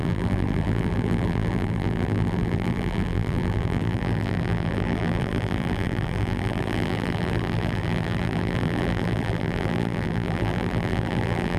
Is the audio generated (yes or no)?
yes